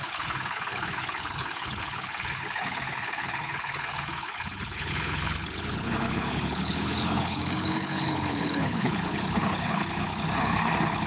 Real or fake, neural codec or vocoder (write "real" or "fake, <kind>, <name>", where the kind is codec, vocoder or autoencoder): fake, codec, HILCodec